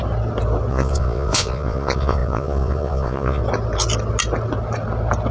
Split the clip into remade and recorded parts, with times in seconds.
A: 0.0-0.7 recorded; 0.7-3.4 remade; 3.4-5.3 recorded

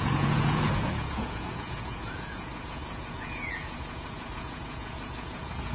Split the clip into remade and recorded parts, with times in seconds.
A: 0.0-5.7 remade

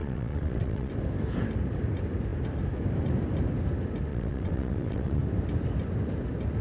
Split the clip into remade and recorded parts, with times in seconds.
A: 0.0-0.9 remade; 0.9-4.1 recorded; 4.1-5.2 remade; 5.2-6.6 recorded

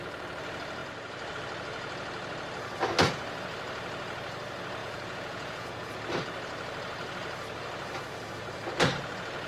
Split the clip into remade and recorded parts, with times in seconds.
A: 0.0-4.8 recorded; 4.8-5.9 remade; 5.9-9.5 recorded

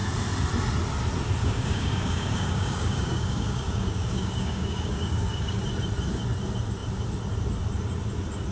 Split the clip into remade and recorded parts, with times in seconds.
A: 0.0-1.4 recorded; 1.4-5.6 remade; 5.6-8.5 recorded